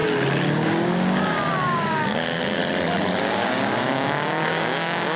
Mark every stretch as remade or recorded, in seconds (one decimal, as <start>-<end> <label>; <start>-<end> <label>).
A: 0.0-0.5 recorded; 0.5-2.6 remade; 2.6-3.2 recorded; 3.2-5.2 remade